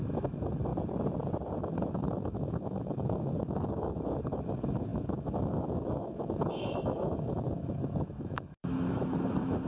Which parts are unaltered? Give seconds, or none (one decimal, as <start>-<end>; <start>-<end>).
0.7-1.6